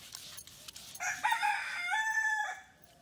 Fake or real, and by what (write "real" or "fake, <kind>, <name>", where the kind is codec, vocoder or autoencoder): real